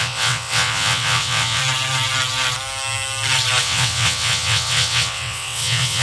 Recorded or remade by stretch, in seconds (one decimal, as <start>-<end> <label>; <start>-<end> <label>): 0.0-1.6 remade; 1.6-3.6 recorded; 3.6-6.0 remade